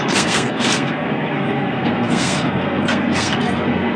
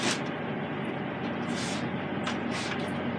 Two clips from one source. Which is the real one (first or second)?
second